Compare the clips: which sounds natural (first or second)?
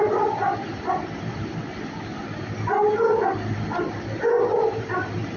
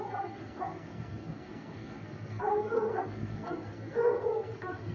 first